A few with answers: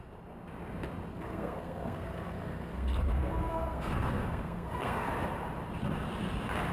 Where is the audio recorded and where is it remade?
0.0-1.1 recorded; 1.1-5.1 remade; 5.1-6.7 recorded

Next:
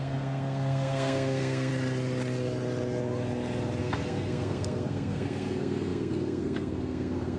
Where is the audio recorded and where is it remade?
0.0-1.7 remade; 1.7-3.8 recorded; 3.8-7.4 remade

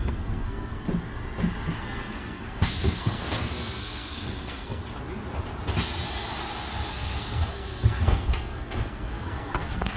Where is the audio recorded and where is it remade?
0.0-0.9 remade; 0.9-1.8 recorded; 1.8-4.8 remade; 4.8-6.9 recorded; 6.9-10.0 remade

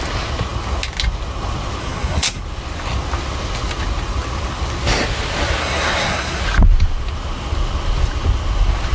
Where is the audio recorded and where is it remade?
0.0-1.8 recorded; 1.8-2.4 remade; 2.4-5.6 recorded; 5.6-6.4 remade; 6.4-8.9 recorded

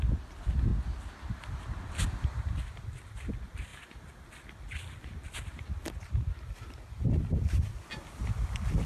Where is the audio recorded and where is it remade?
0.0-8.9 recorded

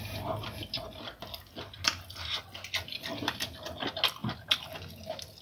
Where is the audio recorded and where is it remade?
0.0-5.4 recorded

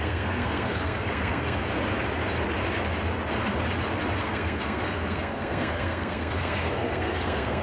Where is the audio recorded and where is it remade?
0.0-1.6 remade; 1.6-4.2 recorded; 4.2-7.6 remade

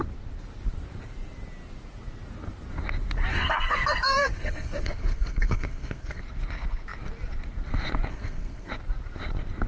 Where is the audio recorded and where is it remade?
0.0-3.3 recorded; 3.3-6.2 remade; 6.2-8.1 recorded; 8.1-8.7 remade; 8.7-9.7 recorded